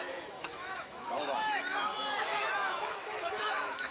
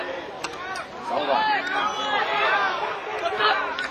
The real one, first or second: second